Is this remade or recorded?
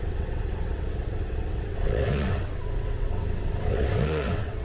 remade